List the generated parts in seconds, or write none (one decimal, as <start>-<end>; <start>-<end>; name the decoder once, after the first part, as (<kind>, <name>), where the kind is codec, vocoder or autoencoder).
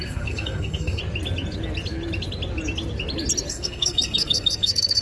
0.0-1.0 (codec, SNAC); 3.5-5.0